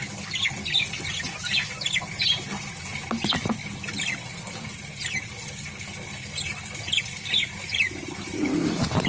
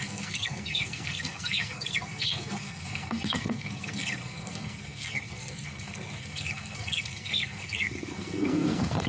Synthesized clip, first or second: second